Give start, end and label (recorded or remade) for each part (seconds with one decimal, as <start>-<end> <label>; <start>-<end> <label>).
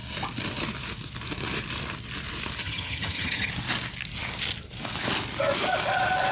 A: 0.0-2.6 recorded; 2.6-3.5 remade; 3.5-6.3 recorded